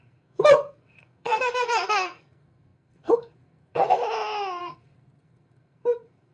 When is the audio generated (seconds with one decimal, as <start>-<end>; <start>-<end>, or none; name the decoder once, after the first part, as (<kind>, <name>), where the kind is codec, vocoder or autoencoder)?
0.0-4.0 (codec, SNAC); 4.6-6.3